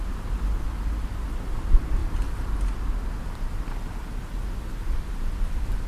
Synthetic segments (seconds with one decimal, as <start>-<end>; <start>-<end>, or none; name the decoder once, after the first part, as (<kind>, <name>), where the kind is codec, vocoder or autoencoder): none